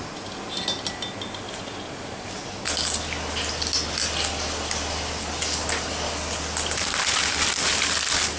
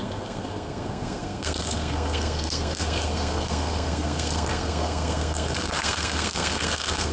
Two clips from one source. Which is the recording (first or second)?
first